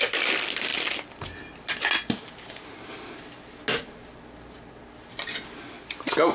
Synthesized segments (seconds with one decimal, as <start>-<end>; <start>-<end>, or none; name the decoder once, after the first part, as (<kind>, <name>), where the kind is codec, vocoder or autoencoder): none